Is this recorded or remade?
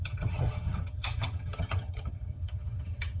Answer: remade